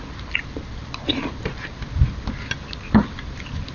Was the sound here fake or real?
real